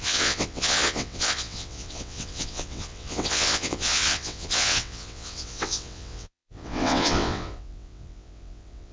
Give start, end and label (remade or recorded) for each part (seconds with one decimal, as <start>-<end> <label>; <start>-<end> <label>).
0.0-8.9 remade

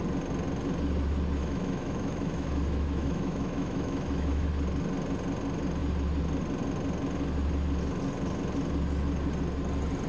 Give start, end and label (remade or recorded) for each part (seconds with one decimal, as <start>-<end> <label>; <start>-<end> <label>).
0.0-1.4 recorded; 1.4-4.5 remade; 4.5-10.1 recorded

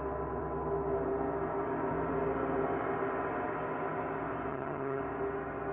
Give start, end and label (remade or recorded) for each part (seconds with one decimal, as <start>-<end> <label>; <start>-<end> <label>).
0.0-4.5 recorded; 4.5-5.0 remade; 5.0-5.7 recorded

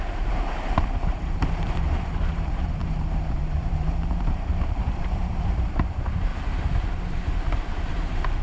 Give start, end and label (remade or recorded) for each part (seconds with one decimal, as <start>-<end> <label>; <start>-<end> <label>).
0.0-6.3 remade; 6.3-7.9 recorded; 7.9-8.4 remade

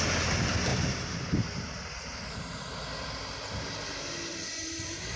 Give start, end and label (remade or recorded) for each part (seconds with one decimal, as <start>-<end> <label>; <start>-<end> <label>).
0.0-0.7 recorded; 0.7-2.7 remade; 2.7-4.3 recorded; 4.3-5.2 remade

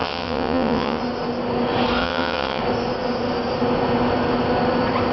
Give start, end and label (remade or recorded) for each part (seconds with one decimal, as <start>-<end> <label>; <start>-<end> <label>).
0.0-1.0 remade; 1.0-2.0 recorded; 2.0-2.6 remade; 2.6-5.1 recorded